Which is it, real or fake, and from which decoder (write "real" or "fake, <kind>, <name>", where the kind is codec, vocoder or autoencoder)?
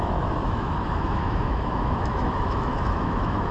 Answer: fake, autoencoder, DAC-VAE